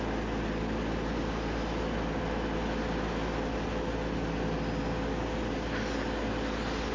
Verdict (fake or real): real